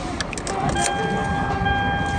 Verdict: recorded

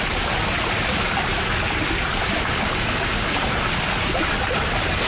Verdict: recorded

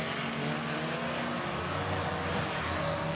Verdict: recorded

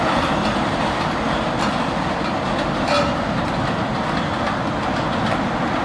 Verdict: recorded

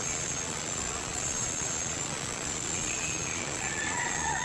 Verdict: remade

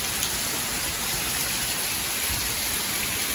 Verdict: recorded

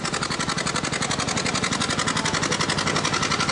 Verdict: recorded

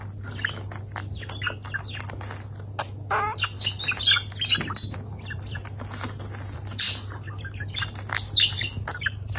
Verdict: recorded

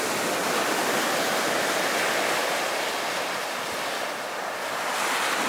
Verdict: recorded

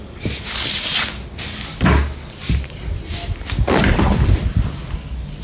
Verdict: recorded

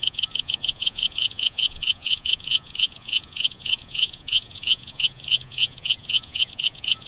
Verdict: remade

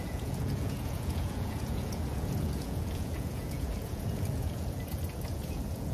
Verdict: remade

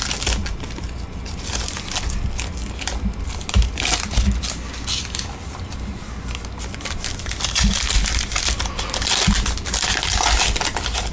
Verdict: recorded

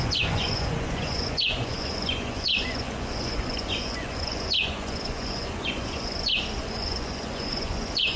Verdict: remade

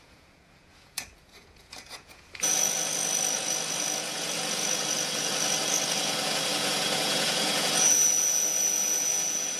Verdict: remade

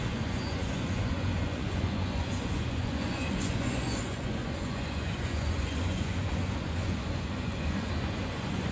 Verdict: remade